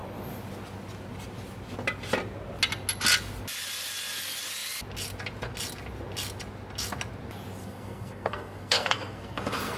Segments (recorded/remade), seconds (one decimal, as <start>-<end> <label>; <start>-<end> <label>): 0.0-7.6 recorded; 7.6-9.8 remade